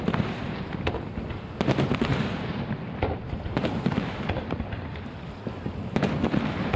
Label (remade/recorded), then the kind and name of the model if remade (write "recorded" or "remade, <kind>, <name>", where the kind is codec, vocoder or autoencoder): recorded